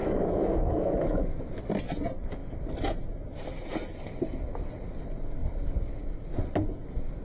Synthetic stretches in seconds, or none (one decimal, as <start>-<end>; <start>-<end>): 0.0-1.5